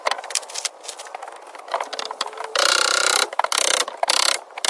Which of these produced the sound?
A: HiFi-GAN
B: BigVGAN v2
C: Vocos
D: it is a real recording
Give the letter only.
D